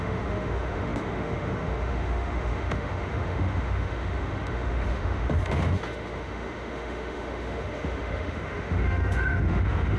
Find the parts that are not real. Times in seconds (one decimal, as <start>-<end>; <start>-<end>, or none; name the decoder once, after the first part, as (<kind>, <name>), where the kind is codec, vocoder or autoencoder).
0.0-10.0 (autoencoder, DAC-VAE)